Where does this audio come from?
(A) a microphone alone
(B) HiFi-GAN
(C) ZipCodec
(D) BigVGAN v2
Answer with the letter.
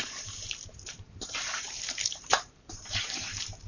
D